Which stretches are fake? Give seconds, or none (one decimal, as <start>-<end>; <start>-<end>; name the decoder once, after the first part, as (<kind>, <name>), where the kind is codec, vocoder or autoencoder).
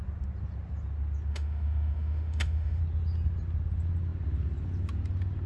1.3-2.8 (autoencoder, DAC-VAE)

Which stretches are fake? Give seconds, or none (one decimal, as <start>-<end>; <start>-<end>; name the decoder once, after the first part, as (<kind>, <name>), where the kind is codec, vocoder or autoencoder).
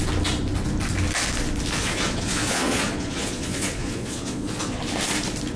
1.8-4.8 (vocoder, Vocos)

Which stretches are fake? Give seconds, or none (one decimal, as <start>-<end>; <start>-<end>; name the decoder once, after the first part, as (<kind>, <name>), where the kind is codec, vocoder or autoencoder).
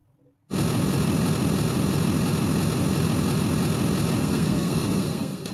4.2-5.5 (codec, SNAC)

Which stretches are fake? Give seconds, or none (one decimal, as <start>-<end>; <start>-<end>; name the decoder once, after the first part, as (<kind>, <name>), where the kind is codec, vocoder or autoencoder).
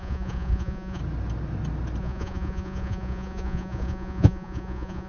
0.0-1.0 (vocoder, Vocos); 2.0-5.1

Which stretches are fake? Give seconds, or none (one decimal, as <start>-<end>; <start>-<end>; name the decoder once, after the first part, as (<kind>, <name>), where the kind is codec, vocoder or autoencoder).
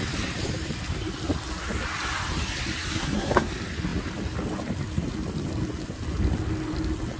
2.9-3.5 (codec, SNAC)